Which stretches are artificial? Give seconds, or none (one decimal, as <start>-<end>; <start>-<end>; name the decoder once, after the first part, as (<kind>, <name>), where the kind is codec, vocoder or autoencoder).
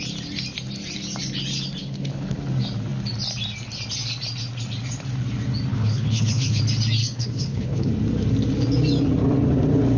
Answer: 1.8-2.4 (codec, HILCodec); 5.7-6.6; 7.0-7.9